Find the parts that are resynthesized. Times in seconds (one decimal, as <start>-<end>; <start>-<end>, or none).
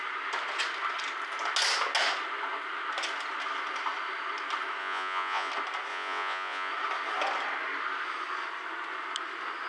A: 4.8-5.5; 5.9-6.7